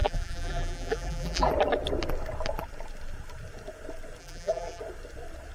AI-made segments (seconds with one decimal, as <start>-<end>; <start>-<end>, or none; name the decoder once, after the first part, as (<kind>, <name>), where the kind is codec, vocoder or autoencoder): 0.0-1.5 (vocoder, BigVGAN v2); 4.2-4.8